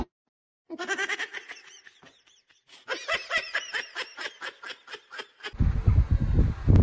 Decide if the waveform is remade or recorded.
recorded